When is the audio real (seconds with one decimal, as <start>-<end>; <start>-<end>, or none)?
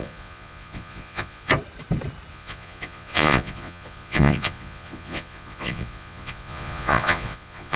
1.5-2.3